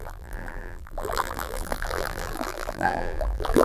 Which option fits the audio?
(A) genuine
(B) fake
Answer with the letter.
B